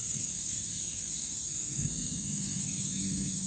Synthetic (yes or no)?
yes